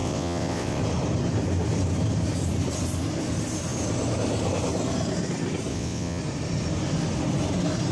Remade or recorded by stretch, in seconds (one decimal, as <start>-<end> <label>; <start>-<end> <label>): 0.0-0.8 remade; 0.8-5.7 recorded; 5.7-6.2 remade; 6.2-7.9 recorded